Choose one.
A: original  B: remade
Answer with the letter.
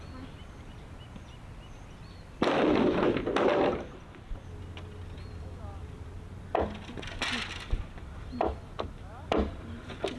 A